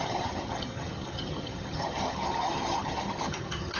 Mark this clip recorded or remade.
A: remade